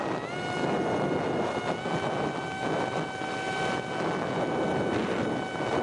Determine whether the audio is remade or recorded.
recorded